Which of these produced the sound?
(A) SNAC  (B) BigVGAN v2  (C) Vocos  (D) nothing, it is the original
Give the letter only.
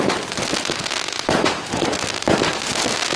D